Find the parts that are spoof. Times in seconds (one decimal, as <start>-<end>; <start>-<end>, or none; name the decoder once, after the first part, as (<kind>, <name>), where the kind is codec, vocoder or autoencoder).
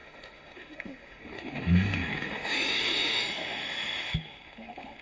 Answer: 0.0-5.0 (autoencoder, DAC-VAE)